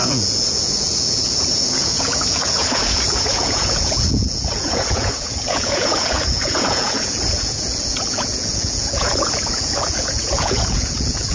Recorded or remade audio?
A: remade